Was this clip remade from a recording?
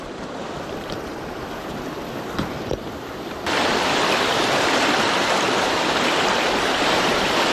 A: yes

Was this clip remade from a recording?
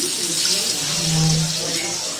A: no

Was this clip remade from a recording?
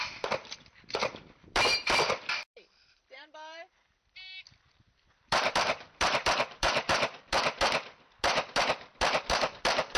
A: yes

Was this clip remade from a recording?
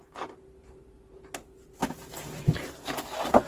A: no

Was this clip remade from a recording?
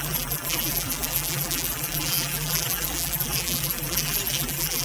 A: yes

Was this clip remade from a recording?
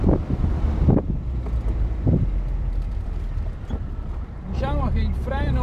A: yes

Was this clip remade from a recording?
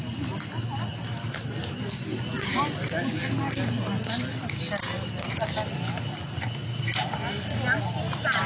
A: no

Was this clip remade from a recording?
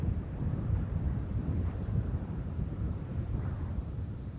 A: yes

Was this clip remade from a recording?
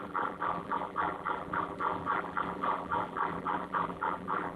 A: yes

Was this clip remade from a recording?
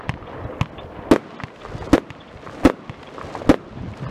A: no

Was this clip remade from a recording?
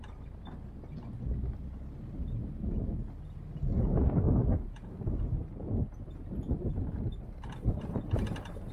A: no